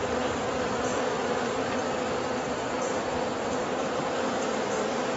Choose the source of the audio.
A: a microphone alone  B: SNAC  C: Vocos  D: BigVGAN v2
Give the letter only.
A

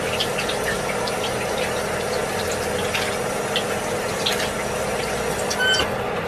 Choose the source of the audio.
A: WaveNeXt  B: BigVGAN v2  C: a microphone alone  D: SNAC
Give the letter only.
C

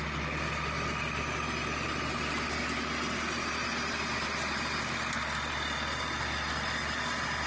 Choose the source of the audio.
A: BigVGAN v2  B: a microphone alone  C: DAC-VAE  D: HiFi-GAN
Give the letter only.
B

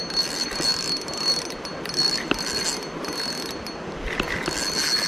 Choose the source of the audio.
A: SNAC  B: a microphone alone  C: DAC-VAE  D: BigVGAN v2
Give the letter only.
B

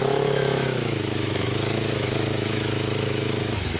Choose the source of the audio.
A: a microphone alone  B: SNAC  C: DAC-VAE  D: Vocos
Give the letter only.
C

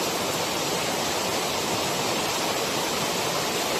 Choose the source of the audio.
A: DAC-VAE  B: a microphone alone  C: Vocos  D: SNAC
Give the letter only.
B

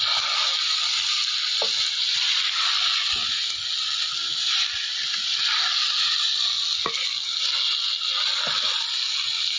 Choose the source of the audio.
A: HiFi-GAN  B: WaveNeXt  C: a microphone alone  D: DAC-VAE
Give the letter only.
C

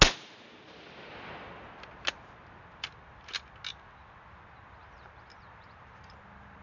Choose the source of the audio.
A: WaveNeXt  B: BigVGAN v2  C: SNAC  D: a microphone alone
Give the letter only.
D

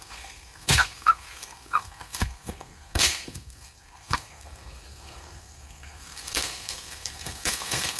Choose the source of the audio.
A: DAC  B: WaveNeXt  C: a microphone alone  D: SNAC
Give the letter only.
D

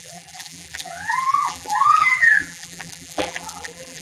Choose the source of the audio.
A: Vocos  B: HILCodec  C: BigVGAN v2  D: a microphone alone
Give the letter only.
C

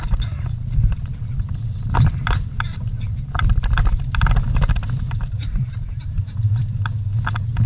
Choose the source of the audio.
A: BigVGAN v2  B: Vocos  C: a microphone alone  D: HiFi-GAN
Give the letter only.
A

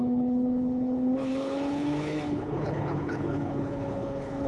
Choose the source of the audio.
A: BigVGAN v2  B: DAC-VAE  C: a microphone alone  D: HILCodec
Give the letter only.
D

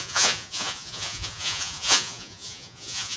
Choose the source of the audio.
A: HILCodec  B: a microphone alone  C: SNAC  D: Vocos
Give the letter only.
D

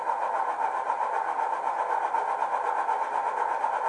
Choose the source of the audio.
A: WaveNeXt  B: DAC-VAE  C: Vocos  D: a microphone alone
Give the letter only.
D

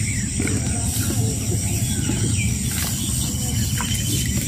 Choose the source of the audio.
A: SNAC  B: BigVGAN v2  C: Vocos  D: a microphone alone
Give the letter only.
D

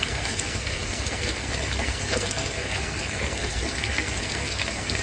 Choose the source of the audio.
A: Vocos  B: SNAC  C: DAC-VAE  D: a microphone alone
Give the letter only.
B